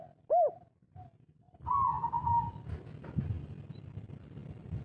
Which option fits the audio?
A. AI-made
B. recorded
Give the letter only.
B